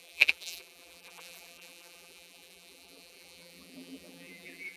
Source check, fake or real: fake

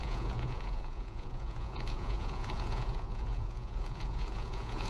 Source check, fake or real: fake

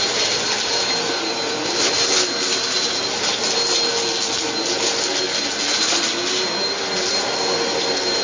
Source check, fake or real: real